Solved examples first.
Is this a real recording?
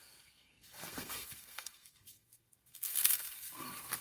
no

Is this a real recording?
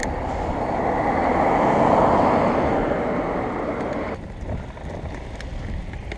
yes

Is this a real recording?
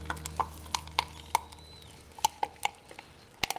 yes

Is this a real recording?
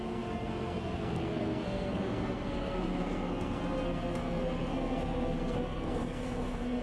no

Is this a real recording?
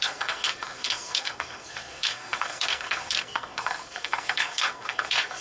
no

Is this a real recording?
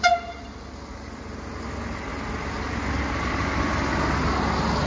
yes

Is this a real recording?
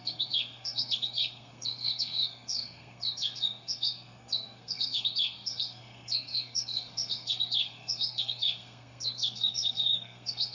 no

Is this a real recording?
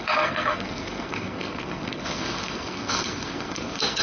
no